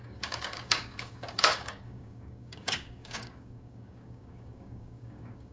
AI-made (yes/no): yes